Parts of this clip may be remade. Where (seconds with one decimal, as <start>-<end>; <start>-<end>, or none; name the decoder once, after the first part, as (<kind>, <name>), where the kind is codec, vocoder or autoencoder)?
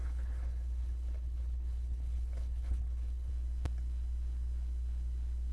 0.0-3.3 (codec, HILCodec)